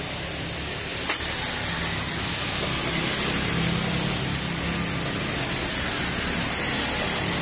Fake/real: real